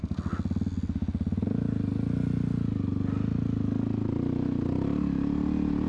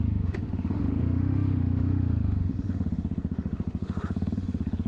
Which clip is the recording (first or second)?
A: first